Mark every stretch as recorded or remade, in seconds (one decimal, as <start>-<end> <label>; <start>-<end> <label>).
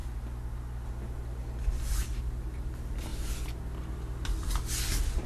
0.0-5.3 recorded